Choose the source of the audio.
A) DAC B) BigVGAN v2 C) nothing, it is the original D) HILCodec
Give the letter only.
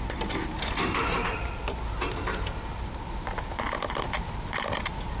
C